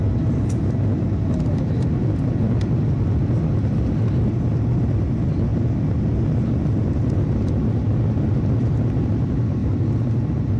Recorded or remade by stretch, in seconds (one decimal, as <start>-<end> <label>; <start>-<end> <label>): 0.0-10.6 recorded